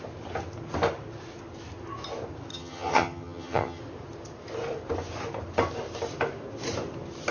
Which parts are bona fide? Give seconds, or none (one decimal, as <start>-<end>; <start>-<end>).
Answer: 0.0-2.5; 3.8-7.3

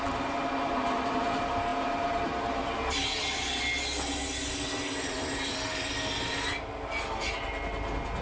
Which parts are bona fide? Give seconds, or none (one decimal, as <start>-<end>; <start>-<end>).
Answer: 0.0-8.2

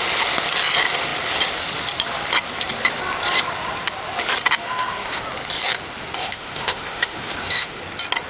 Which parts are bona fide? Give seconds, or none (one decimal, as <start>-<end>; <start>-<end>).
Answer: 0.0-4.6; 5.2-6.2; 7.8-8.3

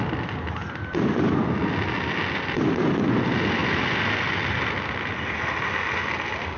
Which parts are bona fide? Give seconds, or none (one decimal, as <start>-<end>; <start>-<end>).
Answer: 0.0-6.6

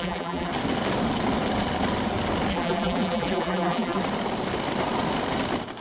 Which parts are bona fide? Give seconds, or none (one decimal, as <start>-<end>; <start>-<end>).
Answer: 0.5-2.5; 4.0-5.8

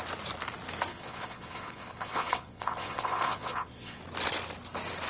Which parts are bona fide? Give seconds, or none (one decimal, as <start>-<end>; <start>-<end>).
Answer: 0.0-0.9; 4.0-5.1